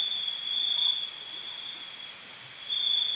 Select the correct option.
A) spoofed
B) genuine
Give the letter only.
B